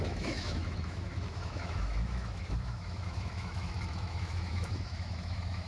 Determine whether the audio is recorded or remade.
remade